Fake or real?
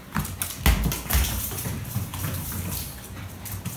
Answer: real